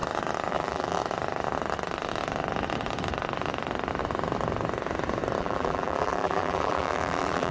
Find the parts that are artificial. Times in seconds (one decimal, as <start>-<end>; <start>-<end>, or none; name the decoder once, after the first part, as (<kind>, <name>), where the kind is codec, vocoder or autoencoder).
0.5-1.0 (vocoder, BigVGAN v2); 5.4-7.5